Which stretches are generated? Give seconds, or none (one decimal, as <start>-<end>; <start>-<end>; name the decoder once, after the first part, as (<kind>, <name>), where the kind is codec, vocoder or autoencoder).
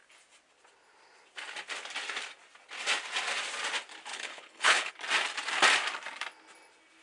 4.1-4.9 (codec, HILCodec)